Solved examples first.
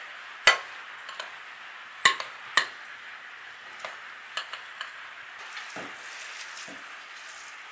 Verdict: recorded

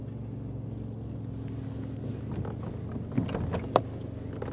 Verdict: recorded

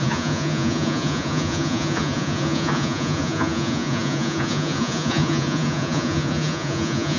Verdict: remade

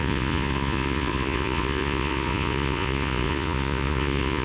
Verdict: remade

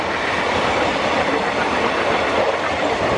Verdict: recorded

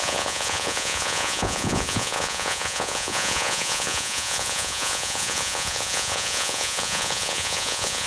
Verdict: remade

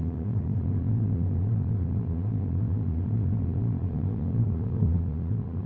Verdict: remade